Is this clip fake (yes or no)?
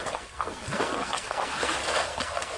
yes